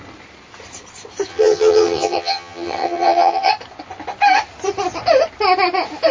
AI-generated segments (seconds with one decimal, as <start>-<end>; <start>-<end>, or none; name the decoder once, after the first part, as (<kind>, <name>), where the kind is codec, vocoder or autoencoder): 1.3-3.5 (vocoder, HiFi-GAN)